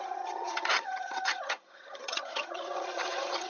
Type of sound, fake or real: fake